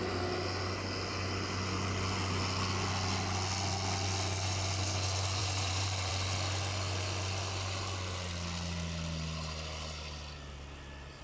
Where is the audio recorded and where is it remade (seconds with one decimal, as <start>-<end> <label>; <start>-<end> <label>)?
0.0-5.4 recorded; 5.4-6.1 remade; 6.1-11.2 recorded